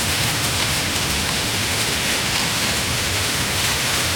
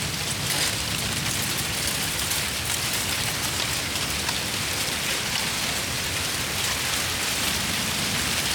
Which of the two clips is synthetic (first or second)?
first